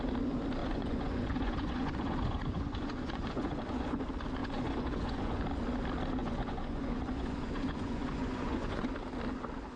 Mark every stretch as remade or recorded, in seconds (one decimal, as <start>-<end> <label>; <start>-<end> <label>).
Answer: 0.0-0.6 recorded; 0.6-4.0 remade; 4.0-4.4 recorded; 4.4-5.4 remade; 5.4-6.2 recorded; 6.2-8.9 remade; 8.9-9.8 recorded